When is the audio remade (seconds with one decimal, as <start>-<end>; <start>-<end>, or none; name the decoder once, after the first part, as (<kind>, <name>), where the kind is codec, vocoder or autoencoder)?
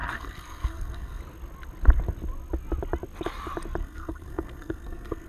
0.0-1.2 (codec, SNAC); 3.8-5.3